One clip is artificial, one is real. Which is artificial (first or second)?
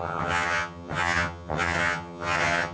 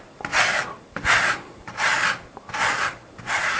first